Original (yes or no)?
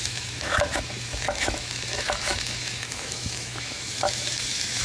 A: no